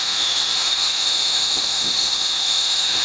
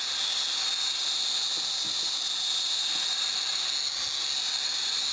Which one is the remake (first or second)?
first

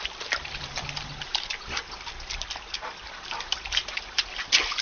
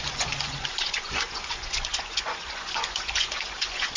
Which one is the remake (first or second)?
second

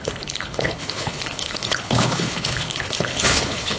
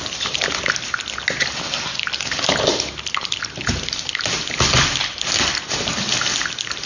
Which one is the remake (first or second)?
first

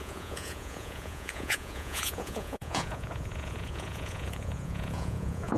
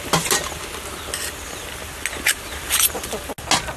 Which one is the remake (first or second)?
first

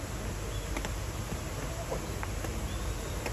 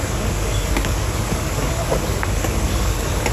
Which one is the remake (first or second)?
second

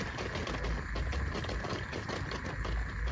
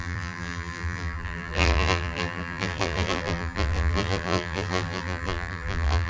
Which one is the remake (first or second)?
second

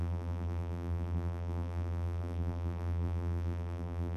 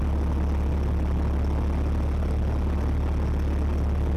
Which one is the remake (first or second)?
first